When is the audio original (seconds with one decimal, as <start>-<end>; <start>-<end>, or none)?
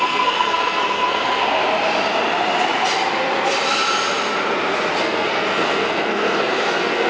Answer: 1.6-5.0